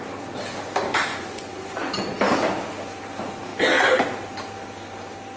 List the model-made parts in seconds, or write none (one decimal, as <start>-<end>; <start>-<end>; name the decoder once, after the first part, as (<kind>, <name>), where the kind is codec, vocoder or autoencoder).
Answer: 1.1-1.9 (vocoder, Vocos)